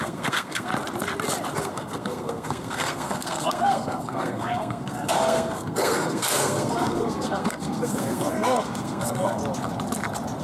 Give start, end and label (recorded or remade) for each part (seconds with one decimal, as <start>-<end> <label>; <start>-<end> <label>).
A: 0.0-0.7 remade; 0.7-1.6 recorded; 1.6-9.4 remade; 9.4-10.4 recorded